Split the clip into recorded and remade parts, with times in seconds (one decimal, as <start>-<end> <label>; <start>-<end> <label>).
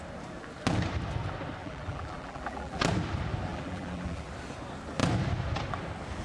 0.0-1.6 recorded; 1.6-2.8 remade; 2.8-3.5 recorded; 3.5-4.3 remade; 4.3-6.2 recorded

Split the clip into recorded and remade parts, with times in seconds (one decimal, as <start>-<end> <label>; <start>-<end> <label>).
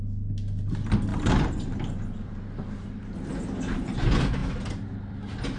0.0-1.1 recorded; 1.1-3.3 remade; 3.3-5.6 recorded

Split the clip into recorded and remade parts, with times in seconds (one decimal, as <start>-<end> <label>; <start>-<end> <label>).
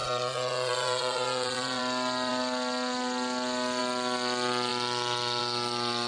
0.0-1.8 remade; 1.8-6.1 recorded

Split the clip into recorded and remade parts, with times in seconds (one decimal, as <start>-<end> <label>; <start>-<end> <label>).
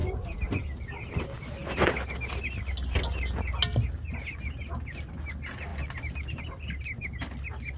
0.0-7.8 recorded